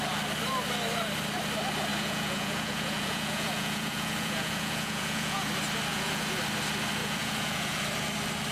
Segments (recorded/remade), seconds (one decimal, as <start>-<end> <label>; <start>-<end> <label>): 0.0-1.9 recorded; 1.9-5.5 remade; 5.5-5.9 recorded; 5.9-6.4 remade; 6.4-7.0 recorded; 7.0-7.8 remade; 7.8-8.5 recorded